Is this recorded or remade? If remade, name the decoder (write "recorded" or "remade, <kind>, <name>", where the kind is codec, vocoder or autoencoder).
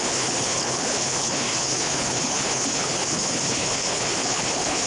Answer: remade, codec, HILCodec